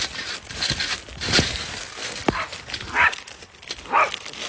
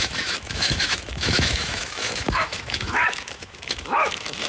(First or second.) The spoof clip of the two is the second